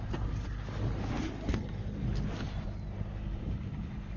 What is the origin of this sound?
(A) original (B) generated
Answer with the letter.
A